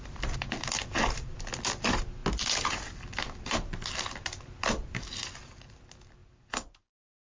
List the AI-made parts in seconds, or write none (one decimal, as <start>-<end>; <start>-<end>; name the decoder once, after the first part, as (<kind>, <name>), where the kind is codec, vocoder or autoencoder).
none

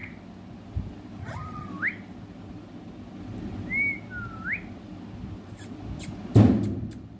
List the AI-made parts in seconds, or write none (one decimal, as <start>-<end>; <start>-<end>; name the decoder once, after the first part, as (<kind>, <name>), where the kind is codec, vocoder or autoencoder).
1.2-1.7 (vocoder, HiFi-GAN)

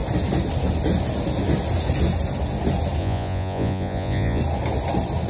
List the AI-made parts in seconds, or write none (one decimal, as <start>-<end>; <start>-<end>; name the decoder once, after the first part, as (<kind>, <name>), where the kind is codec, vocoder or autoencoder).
3.0-4.4 (vocoder, Vocos)

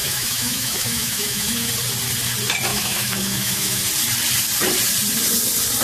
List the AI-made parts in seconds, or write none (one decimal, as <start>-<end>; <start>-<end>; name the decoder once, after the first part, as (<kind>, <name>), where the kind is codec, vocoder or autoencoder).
0.0-1.7 (autoencoder, DAC-VAE); 2.7-3.8

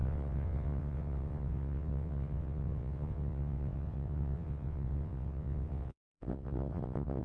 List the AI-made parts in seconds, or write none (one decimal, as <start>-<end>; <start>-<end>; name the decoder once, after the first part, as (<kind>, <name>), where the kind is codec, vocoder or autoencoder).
0.0-7.2 (vocoder, WaveNeXt)

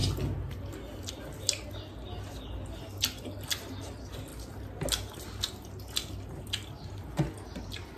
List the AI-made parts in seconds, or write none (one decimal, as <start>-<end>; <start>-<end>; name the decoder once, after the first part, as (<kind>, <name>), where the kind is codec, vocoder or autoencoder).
none